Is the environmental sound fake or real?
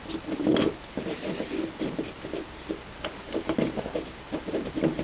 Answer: fake